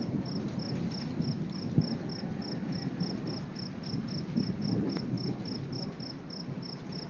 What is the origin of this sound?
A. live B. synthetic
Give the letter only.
A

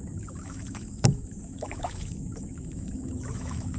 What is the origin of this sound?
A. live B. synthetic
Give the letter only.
B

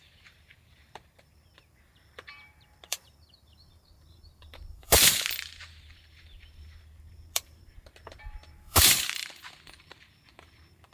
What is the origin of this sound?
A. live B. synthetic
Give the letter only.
B